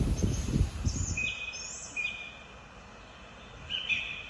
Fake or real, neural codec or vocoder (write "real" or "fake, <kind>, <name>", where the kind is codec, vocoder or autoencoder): real